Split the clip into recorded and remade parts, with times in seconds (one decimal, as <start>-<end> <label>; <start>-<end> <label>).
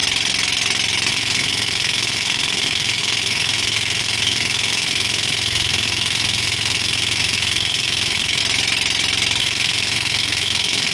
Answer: 0.0-1.1 recorded; 1.1-8.4 remade; 8.4-9.4 recorded; 9.4-10.9 remade